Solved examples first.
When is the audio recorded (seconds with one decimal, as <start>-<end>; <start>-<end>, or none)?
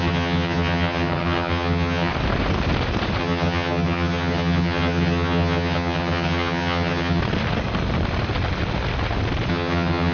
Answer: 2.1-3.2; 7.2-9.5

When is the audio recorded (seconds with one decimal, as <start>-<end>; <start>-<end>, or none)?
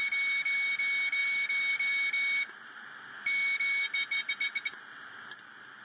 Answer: 0.0-5.8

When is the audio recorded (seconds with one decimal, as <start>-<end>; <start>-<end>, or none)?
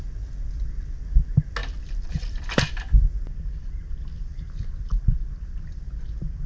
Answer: 0.0-6.5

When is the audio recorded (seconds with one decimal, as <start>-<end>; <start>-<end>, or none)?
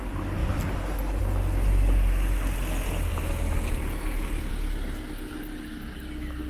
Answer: 0.0-6.5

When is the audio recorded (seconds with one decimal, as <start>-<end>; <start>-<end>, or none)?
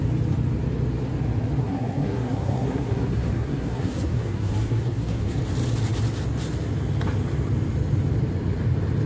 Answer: 0.0-1.6; 5.4-9.1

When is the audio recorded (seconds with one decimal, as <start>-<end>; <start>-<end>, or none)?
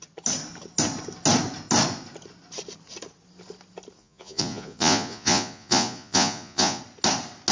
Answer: 0.0-4.0; 6.8-7.5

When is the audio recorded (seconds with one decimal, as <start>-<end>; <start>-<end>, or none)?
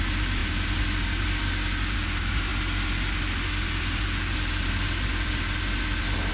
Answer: 0.0-6.3